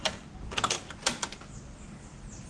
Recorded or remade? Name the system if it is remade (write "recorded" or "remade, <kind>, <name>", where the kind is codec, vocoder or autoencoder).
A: recorded